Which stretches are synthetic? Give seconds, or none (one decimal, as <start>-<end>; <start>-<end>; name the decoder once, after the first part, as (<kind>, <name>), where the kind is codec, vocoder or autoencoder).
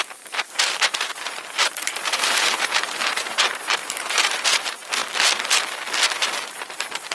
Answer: 0.0-5.0 (vocoder, BigVGAN v2); 6.5-7.1